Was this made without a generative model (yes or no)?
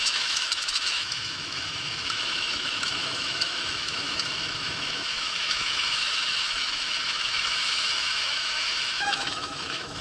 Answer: no